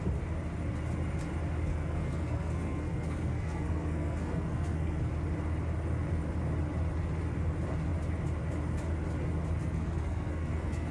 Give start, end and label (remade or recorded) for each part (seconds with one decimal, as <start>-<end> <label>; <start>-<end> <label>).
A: 0.0-1.7 recorded; 1.7-5.1 remade; 5.1-9.6 recorded; 9.6-10.9 remade